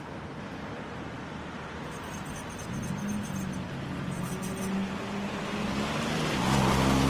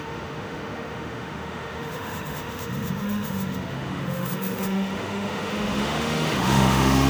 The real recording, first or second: first